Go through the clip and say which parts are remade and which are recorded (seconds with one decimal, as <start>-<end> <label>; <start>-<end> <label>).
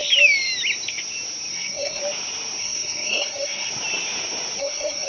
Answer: 0.0-1.5 recorded; 1.5-2.0 remade; 2.0-2.6 recorded; 2.6-3.7 remade; 3.7-4.6 recorded; 4.6-5.1 remade